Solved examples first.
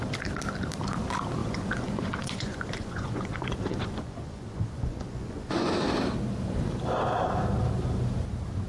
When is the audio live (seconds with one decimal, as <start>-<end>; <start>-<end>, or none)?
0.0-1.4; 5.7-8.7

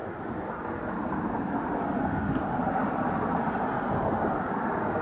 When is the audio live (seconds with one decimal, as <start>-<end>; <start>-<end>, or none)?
0.6-2.8; 3.4-5.0

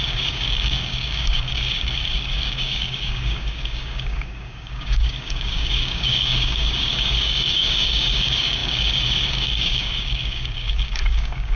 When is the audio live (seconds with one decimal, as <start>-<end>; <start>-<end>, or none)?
none